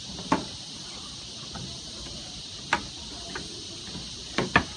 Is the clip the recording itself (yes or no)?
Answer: yes